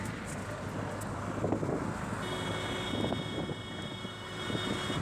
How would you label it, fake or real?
real